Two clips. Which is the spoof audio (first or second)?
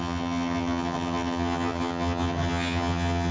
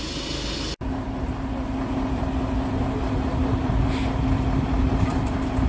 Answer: first